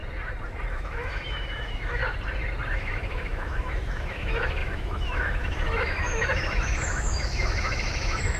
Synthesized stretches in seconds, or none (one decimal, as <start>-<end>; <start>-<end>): 0.7-2.0; 2.7-8.4